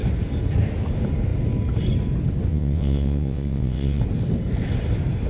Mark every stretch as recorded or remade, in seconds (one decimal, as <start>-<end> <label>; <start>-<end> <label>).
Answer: 0.0-2.5 recorded; 2.5-4.0 remade; 4.0-5.3 recorded